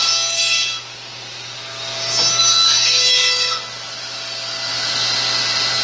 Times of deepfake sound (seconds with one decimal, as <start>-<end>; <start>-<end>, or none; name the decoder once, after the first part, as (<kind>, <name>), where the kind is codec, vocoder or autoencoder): none